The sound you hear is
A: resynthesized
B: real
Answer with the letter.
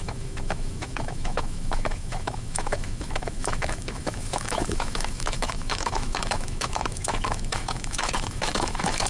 A